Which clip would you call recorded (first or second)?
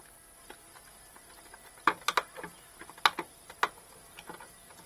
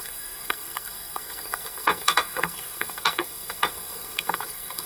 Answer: first